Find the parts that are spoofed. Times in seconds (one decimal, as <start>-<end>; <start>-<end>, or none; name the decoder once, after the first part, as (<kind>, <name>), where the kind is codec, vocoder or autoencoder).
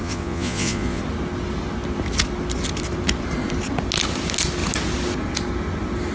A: 0.0-1.0 (vocoder, Vocos)